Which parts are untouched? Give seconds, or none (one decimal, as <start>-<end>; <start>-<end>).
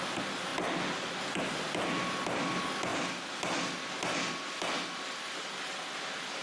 0.0-6.4